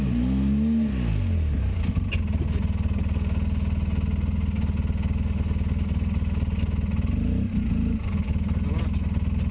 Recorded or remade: recorded